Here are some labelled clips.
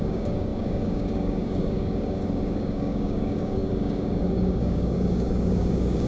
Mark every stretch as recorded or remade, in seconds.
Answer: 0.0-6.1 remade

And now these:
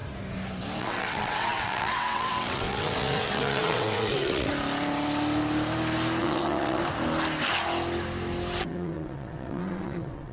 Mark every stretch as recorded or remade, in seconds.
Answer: 0.0-0.8 recorded; 0.8-4.5 remade; 4.5-6.2 recorded; 6.2-6.8 remade; 6.8-8.6 recorded; 8.6-10.3 remade

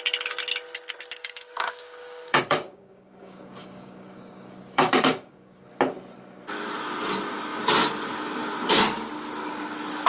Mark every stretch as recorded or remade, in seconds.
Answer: 0.0-1.2 recorded; 1.2-5.7 remade; 5.7-10.1 recorded

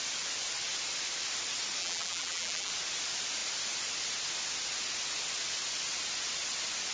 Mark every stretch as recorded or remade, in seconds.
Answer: 0.0-1.8 recorded; 1.8-2.7 remade; 2.7-6.9 recorded

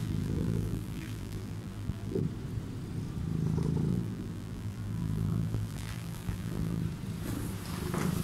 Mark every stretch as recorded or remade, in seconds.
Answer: 0.0-2.2 remade; 2.2-3.9 recorded; 3.9-6.8 remade; 6.8-8.2 recorded